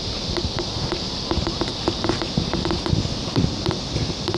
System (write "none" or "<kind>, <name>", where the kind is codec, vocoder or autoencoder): none